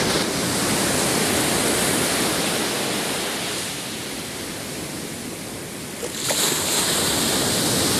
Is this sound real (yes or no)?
yes